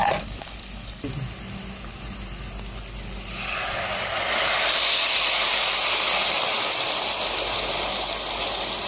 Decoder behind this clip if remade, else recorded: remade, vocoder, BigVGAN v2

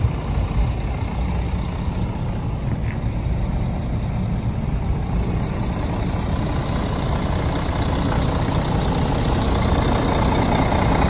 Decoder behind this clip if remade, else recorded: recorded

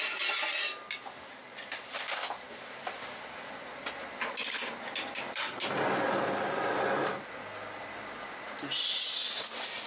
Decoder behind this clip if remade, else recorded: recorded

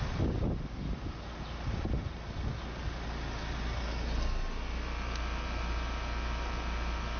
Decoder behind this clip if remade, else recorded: recorded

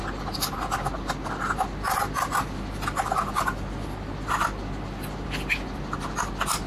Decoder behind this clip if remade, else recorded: recorded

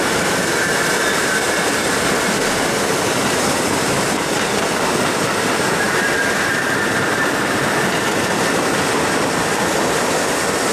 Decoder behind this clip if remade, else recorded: recorded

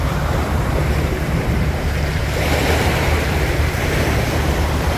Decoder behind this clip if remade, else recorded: remade, vocoder, BigVGAN v2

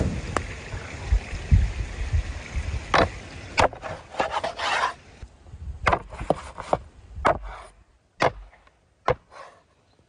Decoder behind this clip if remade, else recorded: recorded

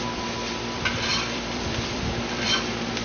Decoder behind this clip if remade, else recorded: remade, vocoder, BigVGAN v2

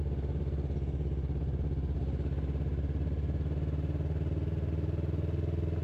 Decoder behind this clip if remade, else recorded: recorded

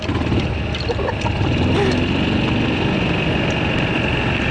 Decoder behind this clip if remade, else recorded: remade, vocoder, BigVGAN v2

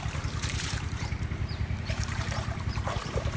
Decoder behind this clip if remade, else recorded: remade, vocoder, BigVGAN v2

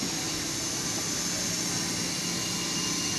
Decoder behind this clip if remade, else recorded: recorded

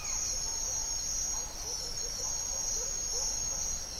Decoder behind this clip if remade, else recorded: recorded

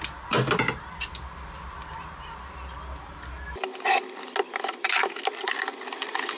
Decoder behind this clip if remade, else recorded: recorded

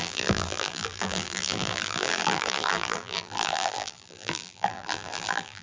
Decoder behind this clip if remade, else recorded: remade, vocoder, BigVGAN v2